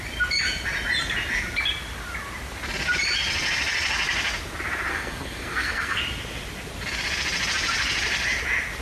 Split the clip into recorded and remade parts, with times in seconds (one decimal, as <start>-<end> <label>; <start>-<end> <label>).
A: 0.0-4.9 recorded; 4.9-6.0 remade; 6.0-8.8 recorded